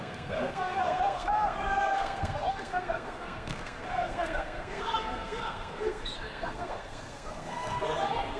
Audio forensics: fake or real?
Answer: fake